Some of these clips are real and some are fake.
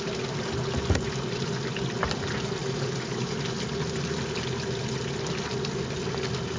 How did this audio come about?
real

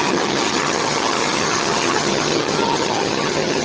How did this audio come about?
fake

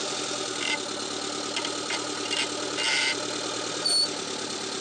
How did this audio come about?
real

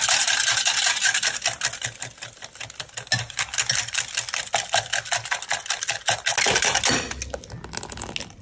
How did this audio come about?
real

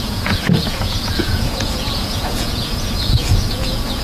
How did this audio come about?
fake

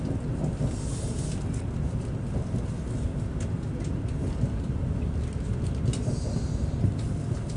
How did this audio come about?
real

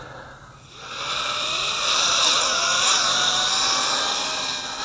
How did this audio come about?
real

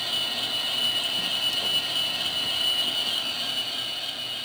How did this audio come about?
real